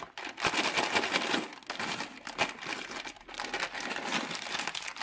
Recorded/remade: recorded